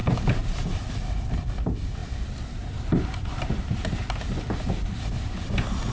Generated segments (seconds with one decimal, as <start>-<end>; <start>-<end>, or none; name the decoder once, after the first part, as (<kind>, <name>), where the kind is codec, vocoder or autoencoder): 0.0-5.9 (vocoder, BigVGAN v2)